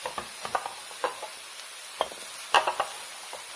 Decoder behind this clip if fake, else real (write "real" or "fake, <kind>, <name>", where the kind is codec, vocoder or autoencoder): real